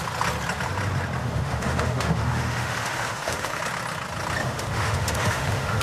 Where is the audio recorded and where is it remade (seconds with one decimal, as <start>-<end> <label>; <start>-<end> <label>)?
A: 0.0-1.2 recorded; 1.2-3.6 remade; 3.6-4.4 recorded; 4.4-5.8 remade